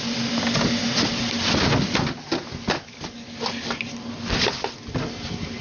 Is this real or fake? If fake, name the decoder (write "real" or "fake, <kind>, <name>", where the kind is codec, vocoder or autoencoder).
real